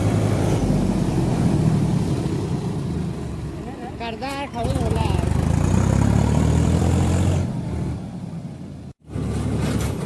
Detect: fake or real fake